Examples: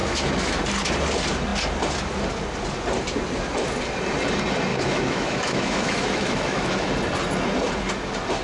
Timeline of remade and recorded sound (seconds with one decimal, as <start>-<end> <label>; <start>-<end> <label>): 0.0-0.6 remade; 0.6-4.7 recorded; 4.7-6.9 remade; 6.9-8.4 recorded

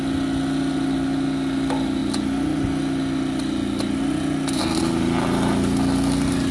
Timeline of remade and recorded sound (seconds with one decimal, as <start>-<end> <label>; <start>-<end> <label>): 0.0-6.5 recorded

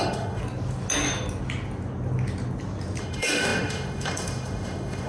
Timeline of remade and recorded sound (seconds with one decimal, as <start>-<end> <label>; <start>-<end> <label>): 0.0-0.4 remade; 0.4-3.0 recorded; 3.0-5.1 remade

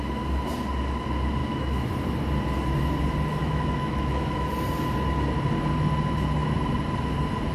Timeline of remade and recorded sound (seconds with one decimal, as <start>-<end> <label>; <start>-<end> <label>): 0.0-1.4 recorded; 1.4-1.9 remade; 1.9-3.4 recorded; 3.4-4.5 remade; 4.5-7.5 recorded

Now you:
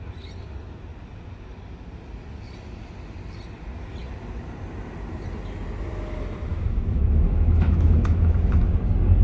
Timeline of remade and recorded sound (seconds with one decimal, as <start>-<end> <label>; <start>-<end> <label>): 0.0-6.5 recorded; 6.5-8.6 remade; 8.6-9.2 recorded

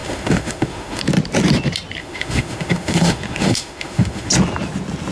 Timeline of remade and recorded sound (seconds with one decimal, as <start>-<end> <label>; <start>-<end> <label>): 0.0-1.0 remade; 1.0-2.0 recorded; 2.0-4.3 remade; 4.3-5.1 recorded

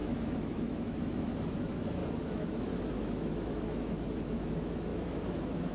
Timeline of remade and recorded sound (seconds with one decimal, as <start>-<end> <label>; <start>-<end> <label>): 0.0-5.7 remade

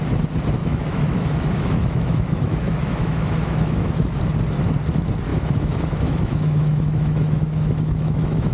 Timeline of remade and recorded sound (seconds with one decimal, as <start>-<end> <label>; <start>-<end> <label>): 0.0-0.6 recorded; 0.6-4.2 remade; 4.2-5.3 recorded; 5.3-8.5 remade